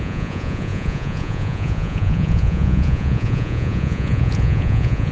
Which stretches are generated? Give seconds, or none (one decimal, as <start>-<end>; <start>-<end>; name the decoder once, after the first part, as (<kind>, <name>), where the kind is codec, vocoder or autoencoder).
0.0-5.1 (vocoder, Vocos)